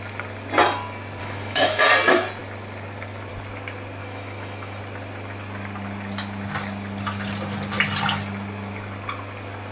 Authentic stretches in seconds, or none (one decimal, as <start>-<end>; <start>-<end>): 0.0-1.2; 1.8-4.0; 4.8-9.7